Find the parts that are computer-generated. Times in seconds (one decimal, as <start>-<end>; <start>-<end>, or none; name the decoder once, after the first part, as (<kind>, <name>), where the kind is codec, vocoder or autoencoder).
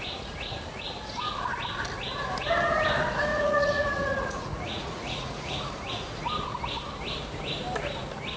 3.3-5.7 (vocoder, Vocos)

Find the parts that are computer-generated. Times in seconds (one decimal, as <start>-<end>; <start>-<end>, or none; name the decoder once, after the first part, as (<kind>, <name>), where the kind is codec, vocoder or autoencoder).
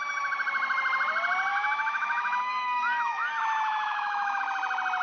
1.5-4.4 (autoencoder, DAC-VAE)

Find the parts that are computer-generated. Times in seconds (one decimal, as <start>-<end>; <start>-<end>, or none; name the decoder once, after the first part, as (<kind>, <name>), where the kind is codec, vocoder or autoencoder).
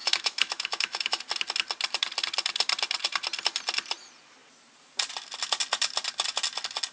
0.0-1.2 (autoencoder, DAC-VAE)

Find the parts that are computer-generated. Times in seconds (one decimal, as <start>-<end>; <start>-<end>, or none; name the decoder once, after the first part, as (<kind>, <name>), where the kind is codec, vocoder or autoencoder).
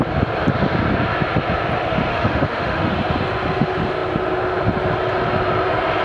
2.1-2.9 (autoencoder, DAC-VAE)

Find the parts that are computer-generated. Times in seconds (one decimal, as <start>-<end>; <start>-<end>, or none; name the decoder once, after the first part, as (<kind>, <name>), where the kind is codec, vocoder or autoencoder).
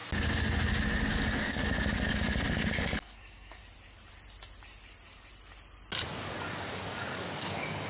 1.1-3.6 (codec, DAC); 6.4-7.9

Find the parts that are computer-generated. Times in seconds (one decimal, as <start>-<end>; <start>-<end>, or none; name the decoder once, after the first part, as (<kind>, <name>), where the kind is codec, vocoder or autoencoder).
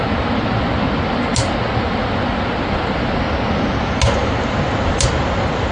none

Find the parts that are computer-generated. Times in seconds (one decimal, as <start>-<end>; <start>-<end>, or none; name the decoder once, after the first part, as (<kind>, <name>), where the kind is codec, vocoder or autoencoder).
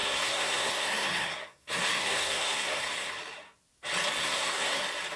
0.0-3.1 (codec, SNAC); 4.2-4.8